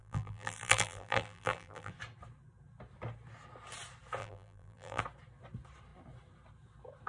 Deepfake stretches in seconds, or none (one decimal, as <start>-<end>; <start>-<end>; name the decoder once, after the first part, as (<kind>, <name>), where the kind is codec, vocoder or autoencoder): 0.0-1.9 (vocoder, BigVGAN v2); 4.2-5.0